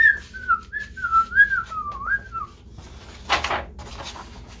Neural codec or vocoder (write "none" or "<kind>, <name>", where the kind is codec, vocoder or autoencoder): none